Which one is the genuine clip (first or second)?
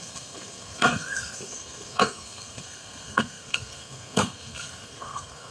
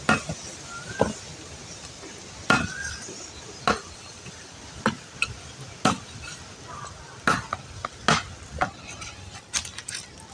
second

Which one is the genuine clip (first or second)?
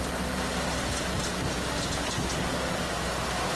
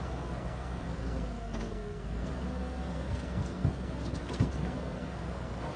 first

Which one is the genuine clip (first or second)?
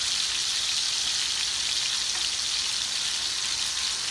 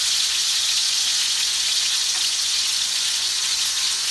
first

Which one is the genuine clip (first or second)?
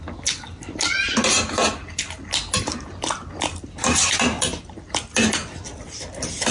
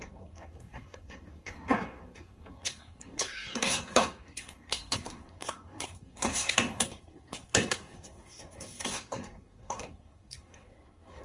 first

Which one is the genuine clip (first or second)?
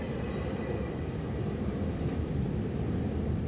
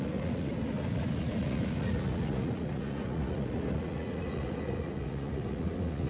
first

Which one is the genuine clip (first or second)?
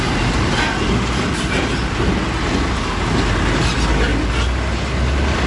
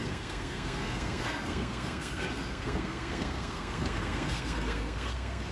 first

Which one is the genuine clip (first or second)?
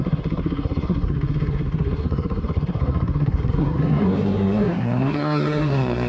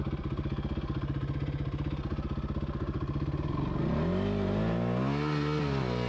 second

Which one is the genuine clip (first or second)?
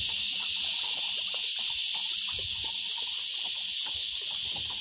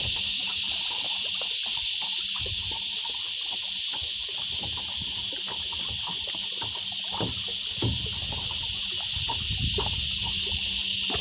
second